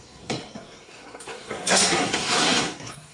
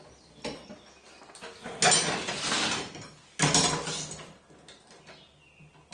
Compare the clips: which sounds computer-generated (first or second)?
first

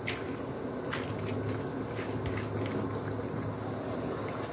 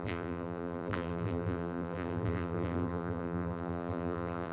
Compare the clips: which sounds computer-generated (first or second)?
second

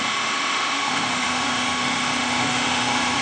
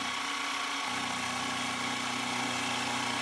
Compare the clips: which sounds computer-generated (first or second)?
first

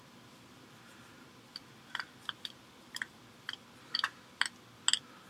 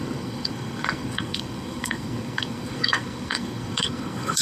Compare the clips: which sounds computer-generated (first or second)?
second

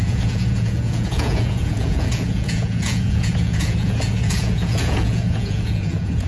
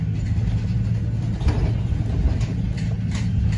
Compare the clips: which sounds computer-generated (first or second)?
first